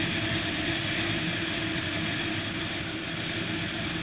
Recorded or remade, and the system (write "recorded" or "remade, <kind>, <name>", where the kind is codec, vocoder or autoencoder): recorded